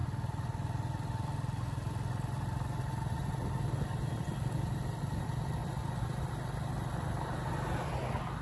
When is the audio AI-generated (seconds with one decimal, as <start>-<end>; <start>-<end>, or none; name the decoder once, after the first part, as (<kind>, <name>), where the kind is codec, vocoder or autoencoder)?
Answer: none